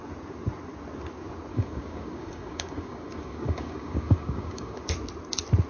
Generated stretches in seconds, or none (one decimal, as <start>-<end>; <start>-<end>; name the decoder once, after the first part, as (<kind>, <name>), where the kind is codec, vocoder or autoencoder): 1.5-4.9 (codec, DAC)